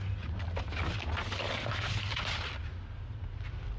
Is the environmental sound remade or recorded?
recorded